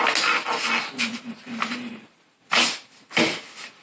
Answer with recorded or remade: recorded